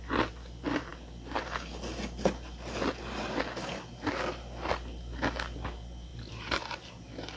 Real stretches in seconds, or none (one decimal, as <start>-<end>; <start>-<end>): 0.0-6.1; 7.0-7.4